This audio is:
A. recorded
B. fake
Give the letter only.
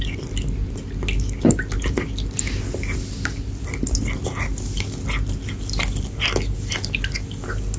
A